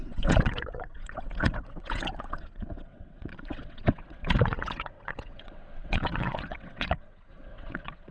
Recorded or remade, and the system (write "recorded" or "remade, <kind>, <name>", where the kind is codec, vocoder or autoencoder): remade, vocoder, WaveNeXt